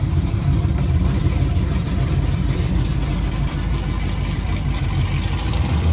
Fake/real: fake